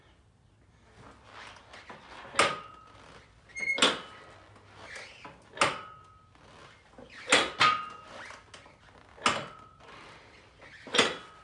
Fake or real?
real